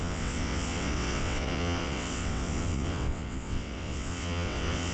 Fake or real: fake